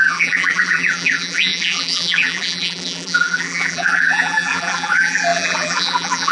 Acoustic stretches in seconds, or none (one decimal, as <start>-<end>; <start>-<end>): none

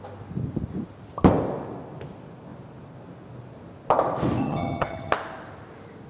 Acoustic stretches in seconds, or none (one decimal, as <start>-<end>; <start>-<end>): 0.0-4.4; 5.1-6.1

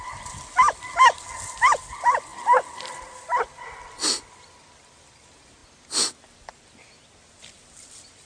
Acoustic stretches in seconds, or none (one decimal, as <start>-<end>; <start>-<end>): 0.0-8.3

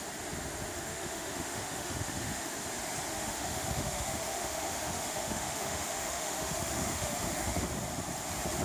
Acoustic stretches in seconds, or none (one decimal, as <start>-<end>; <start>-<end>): 0.0-0.7; 2.5-3.1; 7.7-8.6

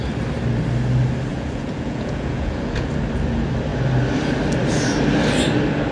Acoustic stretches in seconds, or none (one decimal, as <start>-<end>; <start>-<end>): 0.0-1.3; 2.9-5.9